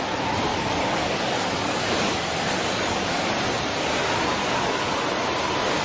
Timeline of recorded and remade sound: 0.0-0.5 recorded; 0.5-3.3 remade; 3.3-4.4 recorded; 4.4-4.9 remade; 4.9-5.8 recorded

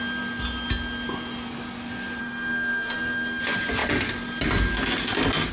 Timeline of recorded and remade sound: 0.0-2.2 recorded; 2.2-3.4 remade; 3.4-5.5 recorded

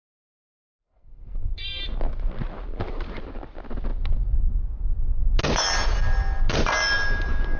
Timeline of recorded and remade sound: 0.0-0.8 recorded; 0.8-1.8 remade; 1.8-7.6 recorded

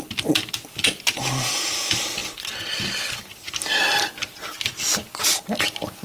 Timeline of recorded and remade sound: 0.0-6.0 recorded

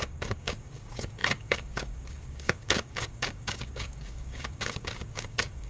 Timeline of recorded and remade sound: 0.0-5.7 remade

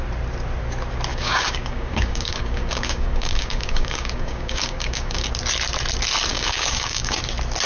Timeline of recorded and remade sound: 0.0-1.1 recorded; 1.1-5.3 remade; 5.3-6.3 recorded; 6.3-7.2 remade; 7.2-7.7 recorded